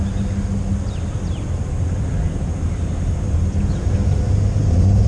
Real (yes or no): yes